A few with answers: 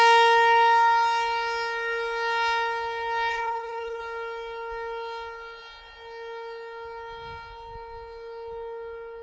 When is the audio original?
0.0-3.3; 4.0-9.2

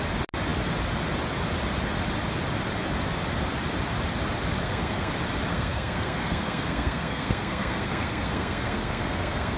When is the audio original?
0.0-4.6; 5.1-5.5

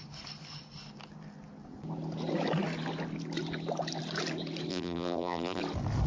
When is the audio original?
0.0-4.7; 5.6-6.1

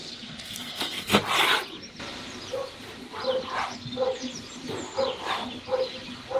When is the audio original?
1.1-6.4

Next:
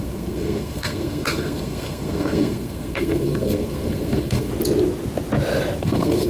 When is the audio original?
4.5-5.8

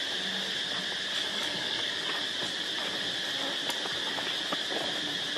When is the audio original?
0.0-1.3; 2.1-5.4

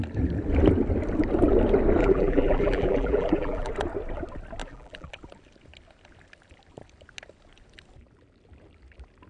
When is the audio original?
0.0-2.0; 3.7-4.6; 5.1-9.3